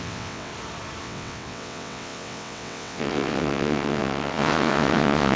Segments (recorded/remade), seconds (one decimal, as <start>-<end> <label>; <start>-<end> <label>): 0.0-0.5 remade; 0.5-1.0 recorded; 1.0-5.4 remade